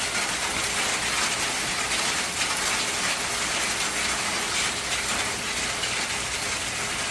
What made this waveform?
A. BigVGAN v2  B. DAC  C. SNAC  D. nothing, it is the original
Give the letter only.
D